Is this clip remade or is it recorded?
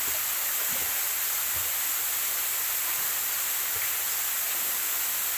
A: recorded